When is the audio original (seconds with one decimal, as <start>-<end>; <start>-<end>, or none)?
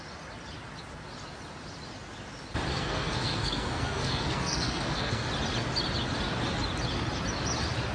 0.0-2.7; 5.3-7.9